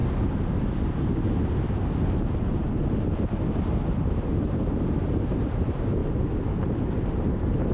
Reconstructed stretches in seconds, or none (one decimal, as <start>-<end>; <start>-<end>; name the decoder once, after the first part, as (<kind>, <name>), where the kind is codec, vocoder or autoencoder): 3.9-6.0 (vocoder, BigVGAN v2); 7.1-7.7